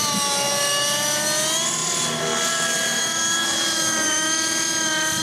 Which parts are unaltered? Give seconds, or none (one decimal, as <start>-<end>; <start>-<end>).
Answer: 0.0-5.2